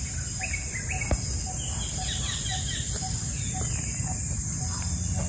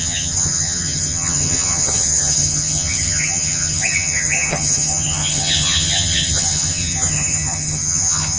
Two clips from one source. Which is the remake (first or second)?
second